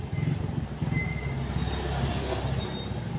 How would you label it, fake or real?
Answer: real